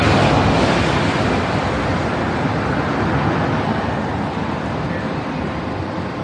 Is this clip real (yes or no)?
yes